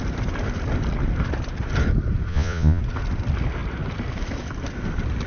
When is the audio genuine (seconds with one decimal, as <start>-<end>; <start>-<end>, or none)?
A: 0.0-2.3; 2.8-5.3